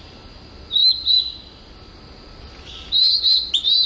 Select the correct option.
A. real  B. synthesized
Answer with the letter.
A